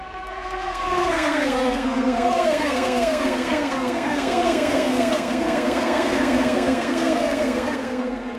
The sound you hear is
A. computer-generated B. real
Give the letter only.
A